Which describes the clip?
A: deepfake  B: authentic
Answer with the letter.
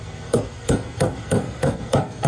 A